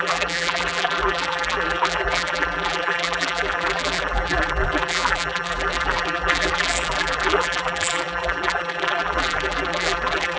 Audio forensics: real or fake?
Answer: fake